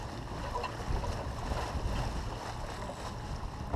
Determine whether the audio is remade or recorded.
recorded